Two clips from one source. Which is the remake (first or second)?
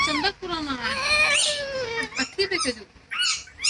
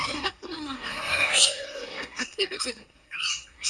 second